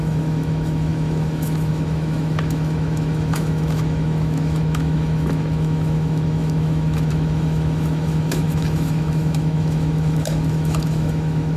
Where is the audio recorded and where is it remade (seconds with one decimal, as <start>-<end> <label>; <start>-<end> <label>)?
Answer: 0.0-11.6 remade